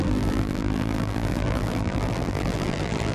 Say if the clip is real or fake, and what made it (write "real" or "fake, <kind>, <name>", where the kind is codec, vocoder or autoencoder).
fake, vocoder, BigVGAN v2